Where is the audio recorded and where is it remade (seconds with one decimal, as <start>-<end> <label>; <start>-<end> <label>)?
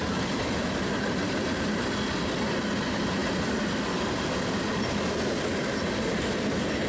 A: 0.0-1.7 remade; 1.7-3.2 recorded; 3.2-4.1 remade; 4.1-6.9 recorded